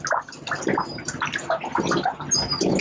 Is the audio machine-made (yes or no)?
no